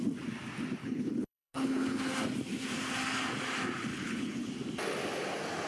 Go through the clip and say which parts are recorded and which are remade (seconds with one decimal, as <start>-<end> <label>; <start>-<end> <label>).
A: 0.0-0.8 recorded; 0.8-2.0 remade; 2.0-3.9 recorded; 3.9-4.5 remade; 4.5-5.7 recorded